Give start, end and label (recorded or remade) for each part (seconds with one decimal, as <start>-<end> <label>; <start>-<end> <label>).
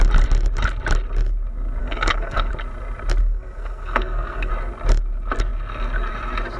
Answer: 0.0-1.8 recorded; 1.8-2.5 remade; 2.5-3.2 recorded; 3.2-4.5 remade; 4.5-6.6 recorded